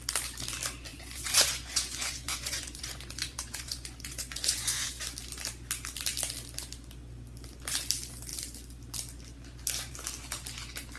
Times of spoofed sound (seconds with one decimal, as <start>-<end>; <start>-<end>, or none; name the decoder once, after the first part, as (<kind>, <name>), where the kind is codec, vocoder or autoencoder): 0.9-4.9 (vocoder, Vocos)